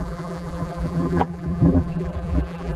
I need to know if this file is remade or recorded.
remade